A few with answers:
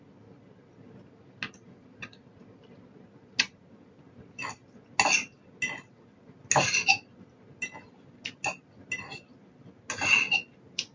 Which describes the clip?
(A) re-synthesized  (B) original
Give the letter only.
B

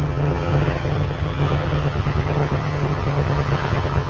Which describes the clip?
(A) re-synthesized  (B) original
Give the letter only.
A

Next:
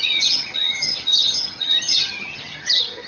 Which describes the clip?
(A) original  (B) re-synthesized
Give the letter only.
B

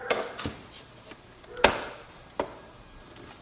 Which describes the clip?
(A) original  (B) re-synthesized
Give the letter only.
A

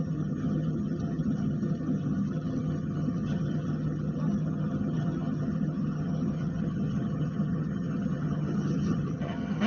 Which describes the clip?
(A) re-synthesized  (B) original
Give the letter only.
A